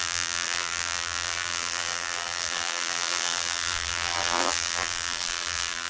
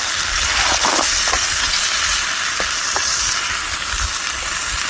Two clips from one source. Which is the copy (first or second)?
first